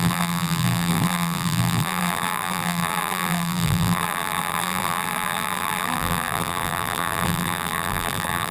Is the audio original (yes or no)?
no